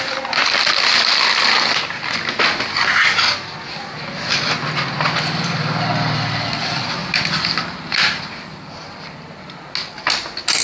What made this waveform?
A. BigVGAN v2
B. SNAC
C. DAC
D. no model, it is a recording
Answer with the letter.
D